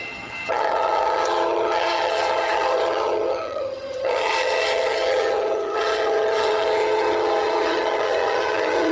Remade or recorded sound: remade